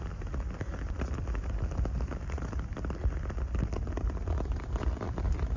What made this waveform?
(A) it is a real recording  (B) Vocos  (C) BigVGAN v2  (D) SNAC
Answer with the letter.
A